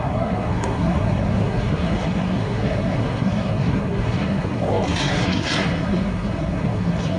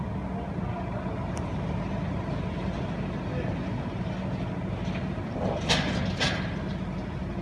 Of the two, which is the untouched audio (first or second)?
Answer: second